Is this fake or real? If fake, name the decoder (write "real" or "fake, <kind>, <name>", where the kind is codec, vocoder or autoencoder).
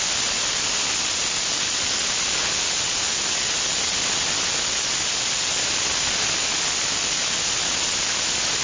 real